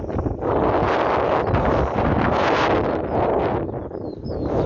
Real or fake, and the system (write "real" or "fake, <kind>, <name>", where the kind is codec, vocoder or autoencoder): real